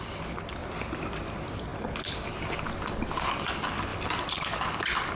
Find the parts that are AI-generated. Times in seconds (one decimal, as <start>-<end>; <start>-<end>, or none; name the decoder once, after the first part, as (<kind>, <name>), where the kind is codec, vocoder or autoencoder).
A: 0.0-0.6 (vocoder, BigVGAN v2); 1.2-1.7; 3.3-5.1

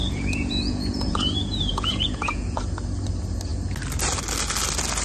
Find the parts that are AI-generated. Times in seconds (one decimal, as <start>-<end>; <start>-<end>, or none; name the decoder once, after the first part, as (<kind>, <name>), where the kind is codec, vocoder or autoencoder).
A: 0.0-2.6 (vocoder, Vocos)

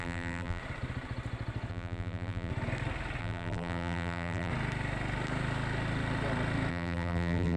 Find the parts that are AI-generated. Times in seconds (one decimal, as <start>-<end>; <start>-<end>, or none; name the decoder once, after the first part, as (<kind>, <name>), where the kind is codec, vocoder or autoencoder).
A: 0.0-0.6 (vocoder, BigVGAN v2); 1.7-2.5; 3.2-4.5; 6.7-7.6